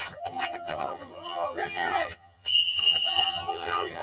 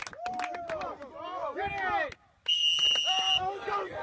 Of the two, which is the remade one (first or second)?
first